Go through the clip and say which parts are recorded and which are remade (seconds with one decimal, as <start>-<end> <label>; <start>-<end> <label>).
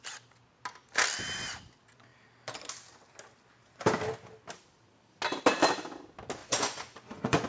0.0-6.4 recorded; 6.4-7.5 remade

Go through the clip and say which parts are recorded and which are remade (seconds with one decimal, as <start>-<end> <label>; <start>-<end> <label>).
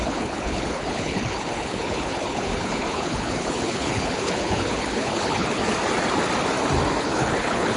0.0-5.6 remade; 5.6-7.0 recorded; 7.0-7.8 remade